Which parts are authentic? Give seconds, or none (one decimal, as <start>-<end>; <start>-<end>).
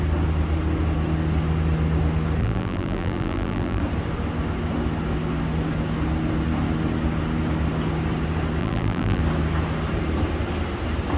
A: 0.0-2.4; 3.8-8.6; 9.2-11.2